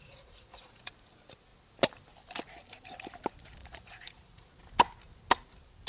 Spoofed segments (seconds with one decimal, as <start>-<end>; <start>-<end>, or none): 0.0-0.9; 3.6-4.5